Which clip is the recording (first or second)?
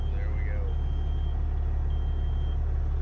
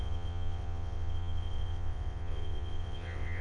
first